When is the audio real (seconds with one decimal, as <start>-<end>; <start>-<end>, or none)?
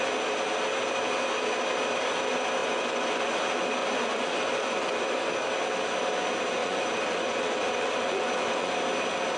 0.0-2.6; 3.4-3.8; 5.3-6.6; 8.7-9.4